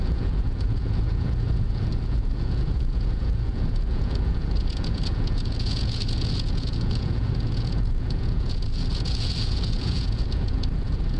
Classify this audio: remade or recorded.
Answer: remade